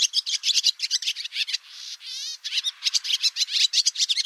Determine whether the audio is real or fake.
fake